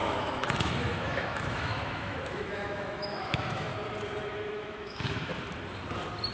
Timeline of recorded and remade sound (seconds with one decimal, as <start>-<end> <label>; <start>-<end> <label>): 0.0-3.7 remade; 3.7-4.3 recorded; 4.3-5.3 remade; 5.3-6.3 recorded